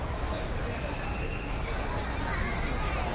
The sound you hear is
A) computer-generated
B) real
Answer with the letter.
B